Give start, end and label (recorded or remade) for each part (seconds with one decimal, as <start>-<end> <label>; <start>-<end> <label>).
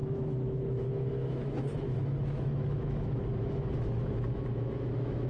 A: 0.0-5.3 remade